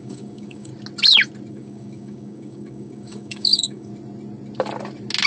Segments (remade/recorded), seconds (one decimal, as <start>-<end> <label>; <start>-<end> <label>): 0.0-0.7 remade; 0.7-1.5 recorded; 1.5-3.9 remade; 3.9-5.3 recorded